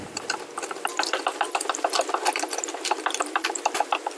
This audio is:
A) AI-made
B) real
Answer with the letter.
B